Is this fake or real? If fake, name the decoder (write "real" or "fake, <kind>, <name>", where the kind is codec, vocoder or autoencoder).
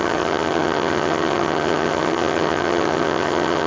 fake, vocoder, HiFi-GAN